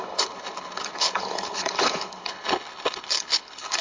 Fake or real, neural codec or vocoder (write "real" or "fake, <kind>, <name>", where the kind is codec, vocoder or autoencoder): fake, codec, HILCodec